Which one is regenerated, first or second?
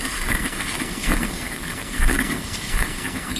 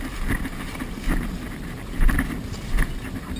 first